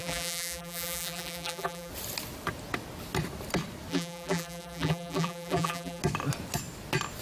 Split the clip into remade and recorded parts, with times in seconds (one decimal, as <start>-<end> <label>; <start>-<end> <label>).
0.0-1.9 remade; 1.9-3.9 recorded; 3.9-6.0 remade; 6.0-7.2 recorded